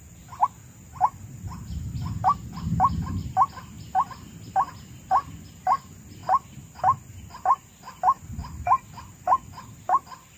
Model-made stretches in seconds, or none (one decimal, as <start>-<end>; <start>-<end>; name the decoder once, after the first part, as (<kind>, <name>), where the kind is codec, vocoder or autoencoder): none